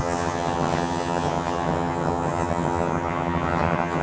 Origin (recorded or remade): remade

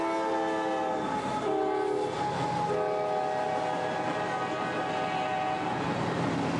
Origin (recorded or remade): recorded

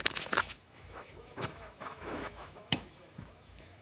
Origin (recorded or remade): remade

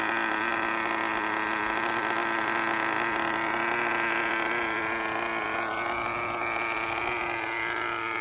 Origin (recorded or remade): recorded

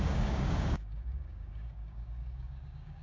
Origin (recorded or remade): remade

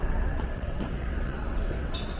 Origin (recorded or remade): remade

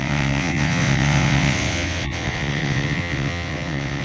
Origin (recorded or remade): remade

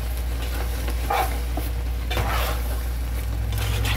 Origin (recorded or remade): recorded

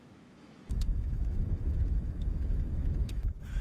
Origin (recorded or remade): remade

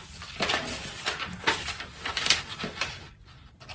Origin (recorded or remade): recorded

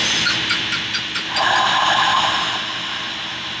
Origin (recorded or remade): recorded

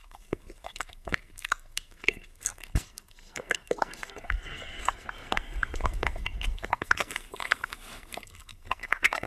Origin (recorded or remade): remade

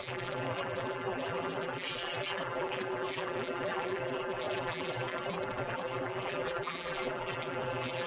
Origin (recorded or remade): remade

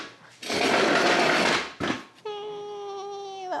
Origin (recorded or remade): recorded